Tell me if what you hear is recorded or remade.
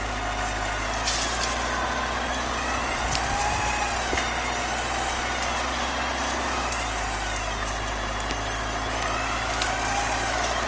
recorded